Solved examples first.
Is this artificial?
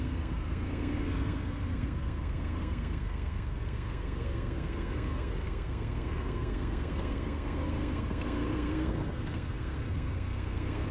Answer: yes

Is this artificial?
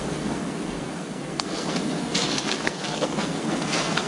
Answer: yes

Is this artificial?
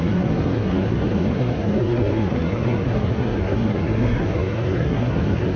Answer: yes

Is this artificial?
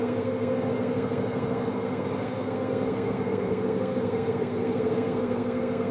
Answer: yes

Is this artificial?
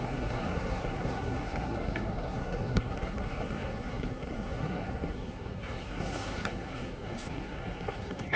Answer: yes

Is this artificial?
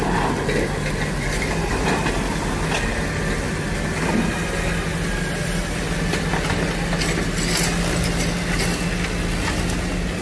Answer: no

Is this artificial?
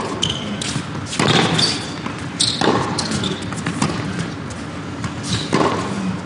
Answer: no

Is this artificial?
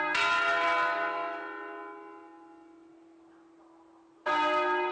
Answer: no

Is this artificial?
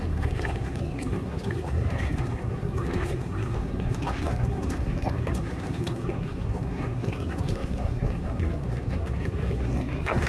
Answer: yes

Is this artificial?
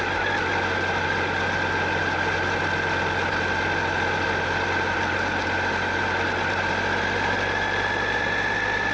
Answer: no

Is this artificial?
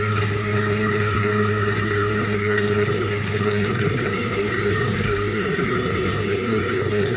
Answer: yes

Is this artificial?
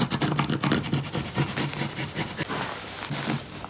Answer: no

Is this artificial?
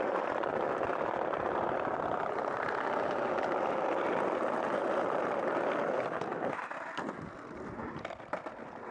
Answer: no